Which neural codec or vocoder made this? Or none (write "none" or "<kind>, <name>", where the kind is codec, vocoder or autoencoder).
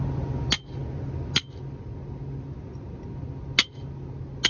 none